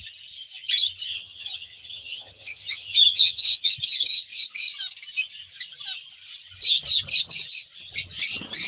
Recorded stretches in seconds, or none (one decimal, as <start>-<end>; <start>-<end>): 0.0-1.1; 3.7-8.7